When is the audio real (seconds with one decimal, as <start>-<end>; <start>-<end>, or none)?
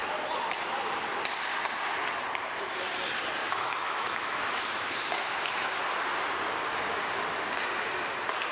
0.0-3.4; 5.7-8.5